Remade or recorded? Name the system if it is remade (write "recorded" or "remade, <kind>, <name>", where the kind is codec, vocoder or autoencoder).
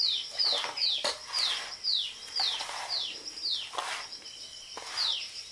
recorded